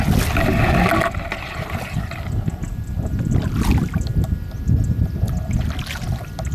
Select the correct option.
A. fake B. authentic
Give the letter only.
B